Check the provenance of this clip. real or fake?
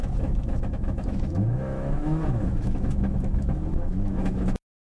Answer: fake